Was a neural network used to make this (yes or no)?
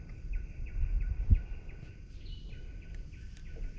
no